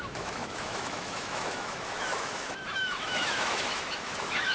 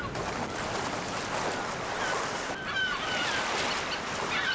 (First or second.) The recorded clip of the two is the second